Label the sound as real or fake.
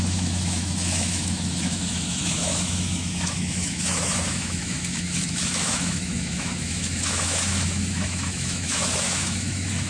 fake